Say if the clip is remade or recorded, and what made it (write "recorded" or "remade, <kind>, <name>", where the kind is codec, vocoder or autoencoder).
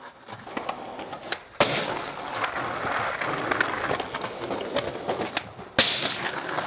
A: recorded